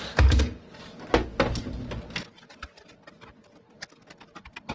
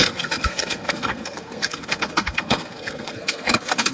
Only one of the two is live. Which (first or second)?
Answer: first